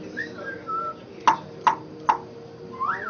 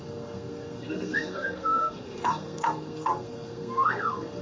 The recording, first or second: first